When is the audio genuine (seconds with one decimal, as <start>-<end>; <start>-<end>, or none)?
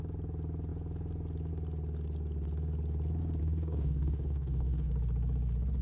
0.0-3.4; 4.9-5.8